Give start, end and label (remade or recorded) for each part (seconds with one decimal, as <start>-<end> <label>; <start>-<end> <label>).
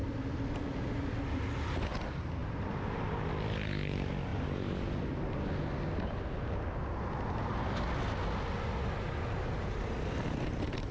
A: 0.0-10.9 recorded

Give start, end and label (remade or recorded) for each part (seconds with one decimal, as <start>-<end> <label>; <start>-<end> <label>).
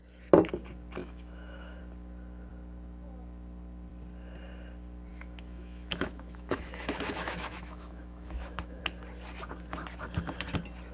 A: 0.0-1.0 recorded; 1.0-1.8 remade; 1.8-5.1 recorded; 5.1-8.8 remade; 8.8-10.9 recorded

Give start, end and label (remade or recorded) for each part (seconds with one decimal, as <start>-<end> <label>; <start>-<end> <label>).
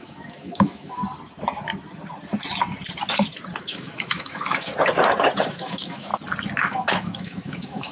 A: 0.0-1.0 remade; 1.0-3.6 recorded; 3.6-4.7 remade; 4.7-5.4 recorded; 5.4-6.1 remade; 6.1-6.6 recorded; 6.6-7.9 remade